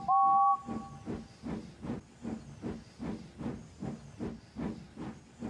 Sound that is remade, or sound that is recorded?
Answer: recorded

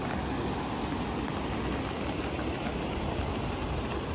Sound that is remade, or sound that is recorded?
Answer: recorded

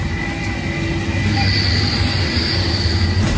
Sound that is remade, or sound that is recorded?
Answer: recorded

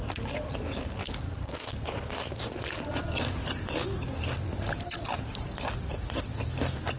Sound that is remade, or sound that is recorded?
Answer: recorded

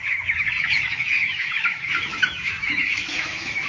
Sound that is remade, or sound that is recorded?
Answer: remade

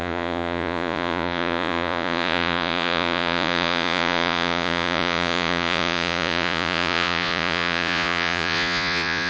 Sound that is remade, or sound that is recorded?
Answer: remade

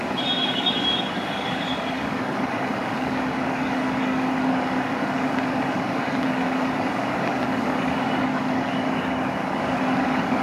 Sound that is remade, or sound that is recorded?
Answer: remade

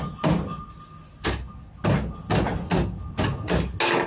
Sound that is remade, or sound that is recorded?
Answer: recorded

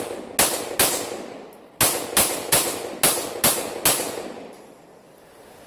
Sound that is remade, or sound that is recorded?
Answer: recorded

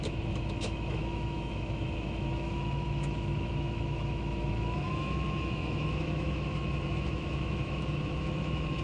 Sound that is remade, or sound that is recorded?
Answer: remade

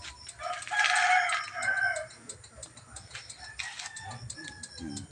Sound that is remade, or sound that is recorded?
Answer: recorded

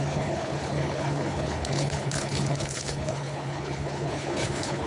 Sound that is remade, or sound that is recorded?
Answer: remade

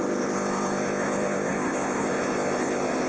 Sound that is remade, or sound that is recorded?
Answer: remade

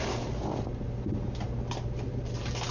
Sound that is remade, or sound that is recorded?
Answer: recorded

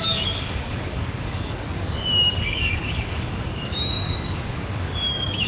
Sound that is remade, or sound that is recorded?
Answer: remade